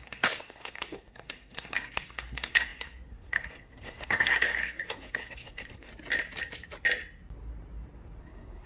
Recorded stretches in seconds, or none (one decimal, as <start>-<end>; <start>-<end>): 5.9-8.2